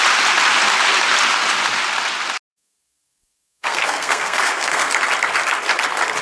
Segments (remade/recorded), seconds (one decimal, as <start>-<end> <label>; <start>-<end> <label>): 0.0-2.5 recorded; 2.5-4.9 remade; 4.9-6.2 recorded